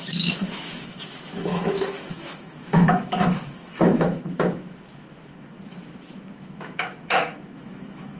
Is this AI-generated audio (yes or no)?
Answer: yes